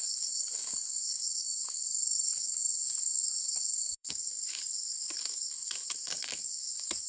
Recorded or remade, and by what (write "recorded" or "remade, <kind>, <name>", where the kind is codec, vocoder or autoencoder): remade, codec, DAC